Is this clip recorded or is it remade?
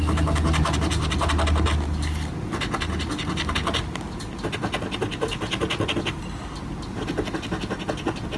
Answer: recorded